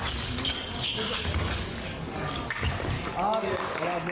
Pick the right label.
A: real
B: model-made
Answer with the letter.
B